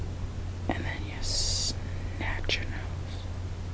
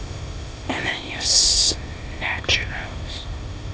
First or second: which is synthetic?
second